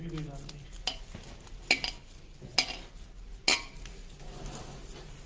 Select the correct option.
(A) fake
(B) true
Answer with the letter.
B